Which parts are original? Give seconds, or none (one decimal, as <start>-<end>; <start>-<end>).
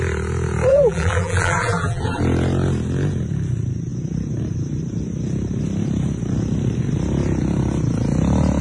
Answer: 0.0-0.7; 2.2-8.6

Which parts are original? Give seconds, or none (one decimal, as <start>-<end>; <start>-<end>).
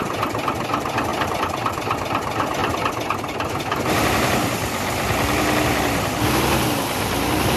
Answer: 0.0-1.1; 2.0-7.6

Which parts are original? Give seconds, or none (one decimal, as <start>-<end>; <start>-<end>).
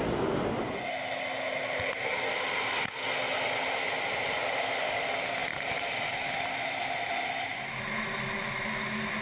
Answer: 0.0-9.2